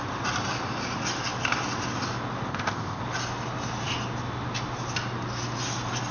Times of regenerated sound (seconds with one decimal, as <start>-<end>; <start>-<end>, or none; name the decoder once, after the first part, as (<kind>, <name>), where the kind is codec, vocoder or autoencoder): 2.5-3.0 (codec, ZipCodec)